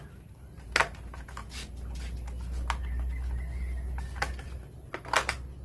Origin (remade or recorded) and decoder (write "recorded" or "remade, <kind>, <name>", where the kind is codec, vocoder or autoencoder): recorded